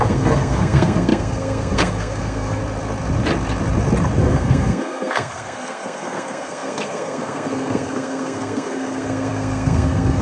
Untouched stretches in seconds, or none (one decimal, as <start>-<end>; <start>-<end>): 2.6-4.2